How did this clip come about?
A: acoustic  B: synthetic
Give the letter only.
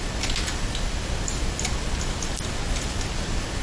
A